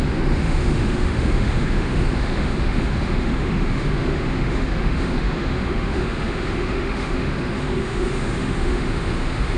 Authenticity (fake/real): fake